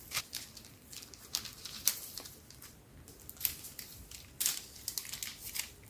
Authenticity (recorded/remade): recorded